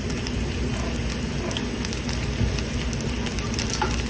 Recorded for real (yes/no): yes